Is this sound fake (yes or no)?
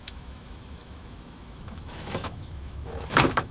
yes